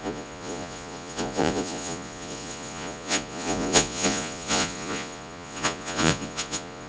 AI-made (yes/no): yes